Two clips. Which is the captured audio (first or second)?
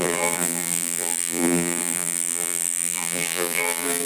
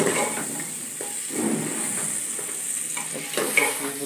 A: second